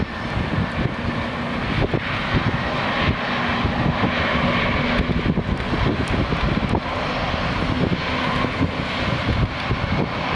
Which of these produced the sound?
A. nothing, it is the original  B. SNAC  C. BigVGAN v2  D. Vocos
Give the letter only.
A